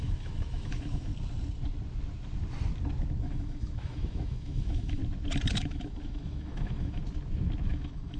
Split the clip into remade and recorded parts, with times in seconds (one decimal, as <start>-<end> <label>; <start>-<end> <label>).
0.0-1.1 remade; 1.1-3.2 recorded; 3.2-5.0 remade; 5.0-5.5 recorded; 5.5-7.0 remade; 7.0-7.7 recorded; 7.7-8.2 remade